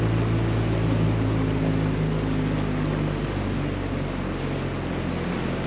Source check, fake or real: real